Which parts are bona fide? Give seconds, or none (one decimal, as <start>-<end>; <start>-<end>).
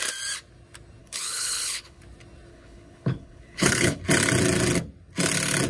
0.0-1.0; 2.0-2.5; 4.0-5.7